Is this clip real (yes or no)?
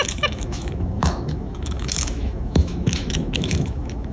no